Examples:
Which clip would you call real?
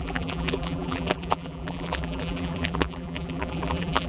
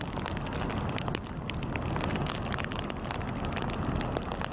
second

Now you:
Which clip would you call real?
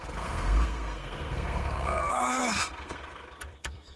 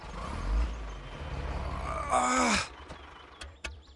second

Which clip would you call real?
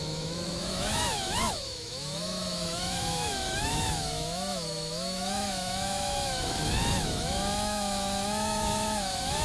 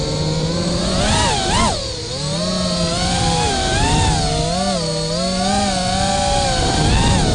second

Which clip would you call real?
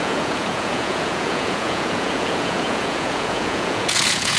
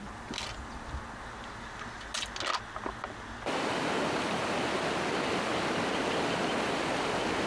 second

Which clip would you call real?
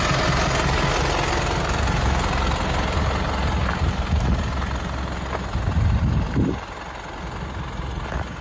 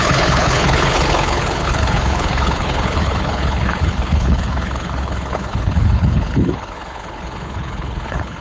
first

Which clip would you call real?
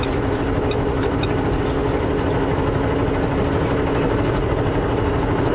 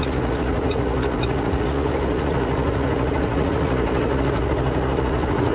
first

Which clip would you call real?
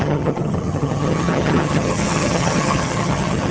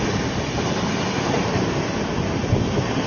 second